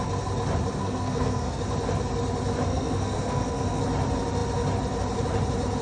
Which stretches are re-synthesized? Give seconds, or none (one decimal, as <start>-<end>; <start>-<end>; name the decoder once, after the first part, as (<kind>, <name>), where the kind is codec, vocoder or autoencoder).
0.8-1.6 (codec, SNAC); 2.7-3.8